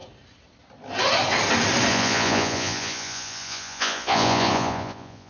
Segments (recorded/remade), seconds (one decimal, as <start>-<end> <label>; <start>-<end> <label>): 0.0-1.9 recorded; 1.9-5.3 remade